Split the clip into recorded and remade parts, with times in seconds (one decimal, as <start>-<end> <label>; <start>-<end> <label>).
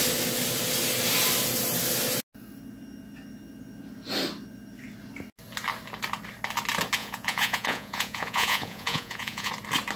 0.0-7.0 recorded; 7.0-9.5 remade; 9.5-10.0 recorded